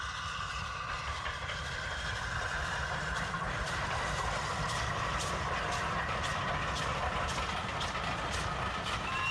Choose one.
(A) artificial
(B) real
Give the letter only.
B